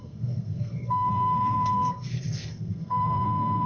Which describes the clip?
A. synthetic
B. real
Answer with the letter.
A